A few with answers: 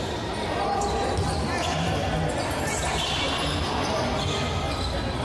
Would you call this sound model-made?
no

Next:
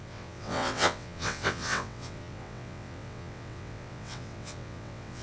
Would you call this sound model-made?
yes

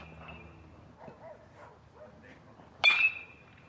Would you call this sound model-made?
no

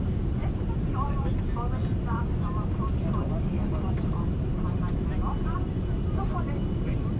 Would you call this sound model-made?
yes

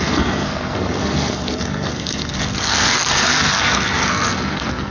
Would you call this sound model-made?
yes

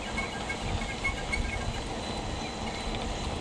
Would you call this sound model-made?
no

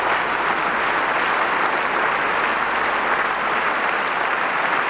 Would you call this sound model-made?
no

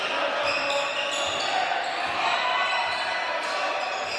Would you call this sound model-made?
no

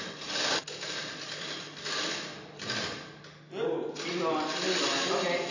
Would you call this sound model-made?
no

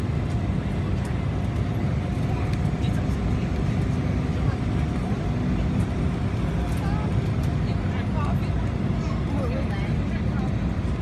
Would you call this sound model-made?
no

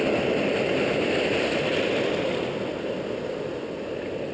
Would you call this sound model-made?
no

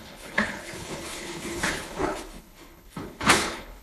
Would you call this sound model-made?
yes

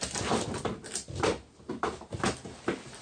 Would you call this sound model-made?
no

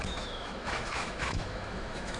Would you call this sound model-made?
yes